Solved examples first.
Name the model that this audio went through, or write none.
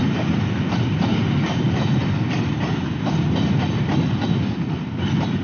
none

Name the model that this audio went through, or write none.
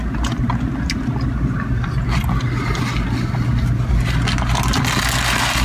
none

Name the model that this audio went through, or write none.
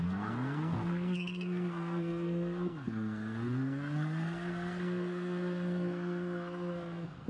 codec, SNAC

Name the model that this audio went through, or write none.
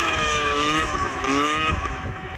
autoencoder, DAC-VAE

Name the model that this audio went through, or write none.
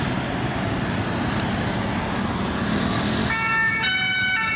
none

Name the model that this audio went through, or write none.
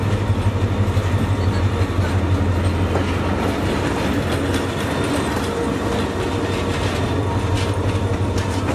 none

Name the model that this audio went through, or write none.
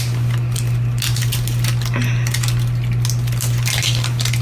none